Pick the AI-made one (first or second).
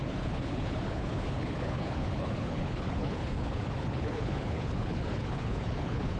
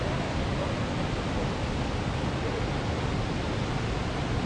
first